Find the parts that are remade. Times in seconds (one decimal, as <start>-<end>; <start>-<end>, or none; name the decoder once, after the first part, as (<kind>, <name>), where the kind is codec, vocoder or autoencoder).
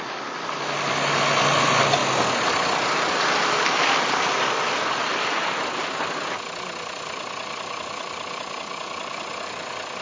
2.0-4.3 (vocoder, BigVGAN v2)